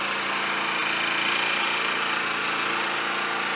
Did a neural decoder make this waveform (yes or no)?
no